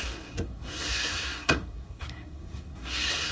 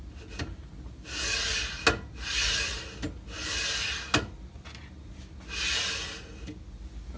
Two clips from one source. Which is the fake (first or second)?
first